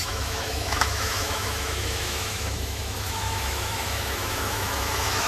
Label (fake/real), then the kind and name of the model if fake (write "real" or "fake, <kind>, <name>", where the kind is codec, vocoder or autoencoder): fake, autoencoder, DAC-VAE